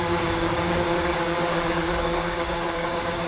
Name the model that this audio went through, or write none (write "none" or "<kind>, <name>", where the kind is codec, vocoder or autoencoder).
codec, DAC